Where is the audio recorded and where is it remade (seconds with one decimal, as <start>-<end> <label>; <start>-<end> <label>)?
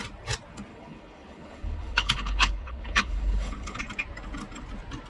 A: 0.0-0.7 recorded; 0.7-3.8 remade; 3.8-5.1 recorded